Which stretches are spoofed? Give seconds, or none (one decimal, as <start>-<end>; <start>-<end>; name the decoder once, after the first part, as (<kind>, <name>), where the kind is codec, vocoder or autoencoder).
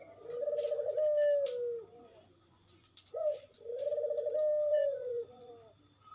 1.9-3.7 (vocoder, Vocos); 4.7-5.5